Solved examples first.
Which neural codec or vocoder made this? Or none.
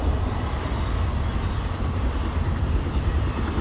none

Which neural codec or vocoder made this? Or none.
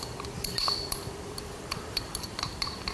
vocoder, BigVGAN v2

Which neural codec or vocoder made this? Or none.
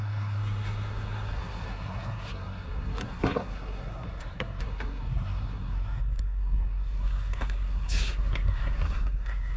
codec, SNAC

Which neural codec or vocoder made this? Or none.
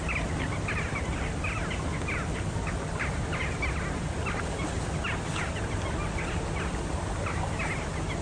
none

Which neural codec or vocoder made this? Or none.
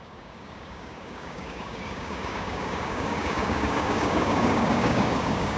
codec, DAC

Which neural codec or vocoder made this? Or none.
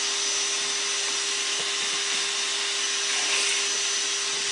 none